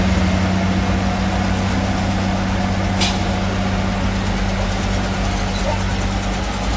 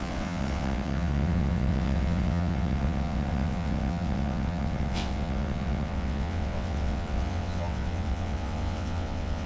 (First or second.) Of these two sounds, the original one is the first